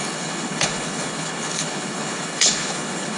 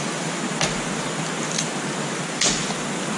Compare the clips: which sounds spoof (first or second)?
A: first